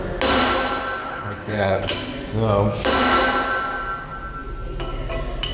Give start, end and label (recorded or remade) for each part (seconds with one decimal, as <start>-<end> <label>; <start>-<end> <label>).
0.0-1.0 recorded; 1.0-1.9 remade; 1.9-5.5 recorded